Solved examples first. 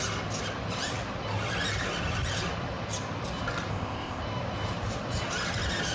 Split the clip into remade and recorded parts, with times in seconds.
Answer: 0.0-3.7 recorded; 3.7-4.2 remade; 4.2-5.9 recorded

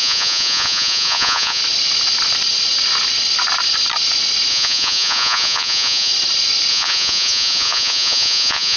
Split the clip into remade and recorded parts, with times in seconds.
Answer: 0.0-1.6 remade; 1.6-4.5 recorded; 4.5-6.1 remade; 6.1-6.7 recorded; 6.7-8.8 remade

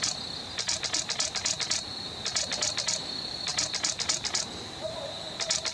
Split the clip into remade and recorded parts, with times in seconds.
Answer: 0.0-5.7 recorded

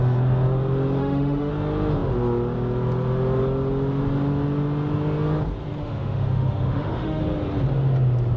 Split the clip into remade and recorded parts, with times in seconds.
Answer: 0.0-1.0 recorded; 1.0-1.5 remade; 1.5-5.8 recorded; 5.8-7.2 remade; 7.2-8.4 recorded